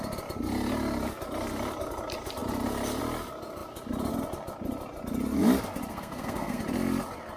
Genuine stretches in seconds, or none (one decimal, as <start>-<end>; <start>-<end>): 0.0-5.9; 6.6-7.4